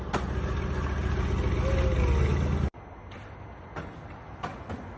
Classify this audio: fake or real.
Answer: real